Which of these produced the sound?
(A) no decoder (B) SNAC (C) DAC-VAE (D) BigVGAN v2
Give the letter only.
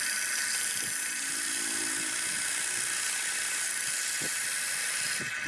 A